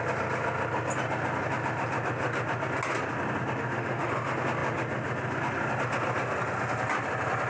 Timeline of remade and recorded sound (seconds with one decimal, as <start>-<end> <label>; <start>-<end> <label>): 0.0-3.6 recorded; 3.6-4.1 remade; 4.1-7.5 recorded